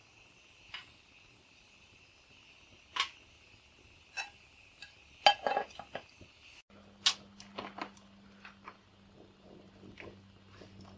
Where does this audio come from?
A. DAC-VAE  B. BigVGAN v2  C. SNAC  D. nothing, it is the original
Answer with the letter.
D